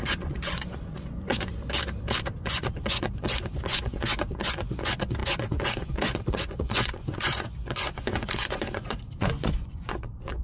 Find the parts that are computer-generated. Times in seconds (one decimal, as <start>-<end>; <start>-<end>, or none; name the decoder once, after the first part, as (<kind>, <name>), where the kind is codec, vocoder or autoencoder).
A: 0.0-1.5 (vocoder, Vocos); 2.4-10.4